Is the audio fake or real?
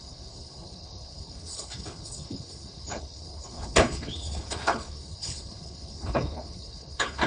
fake